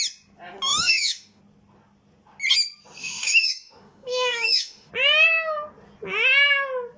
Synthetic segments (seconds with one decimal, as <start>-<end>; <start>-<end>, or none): 0.7-1.4; 3.0-4.9